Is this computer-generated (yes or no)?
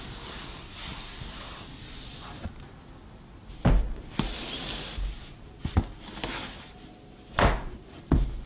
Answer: no